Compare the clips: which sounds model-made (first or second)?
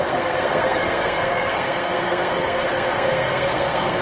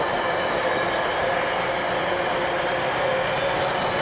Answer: first